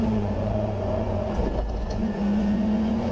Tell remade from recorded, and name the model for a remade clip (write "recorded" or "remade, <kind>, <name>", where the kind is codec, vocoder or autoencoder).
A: remade, vocoder, Vocos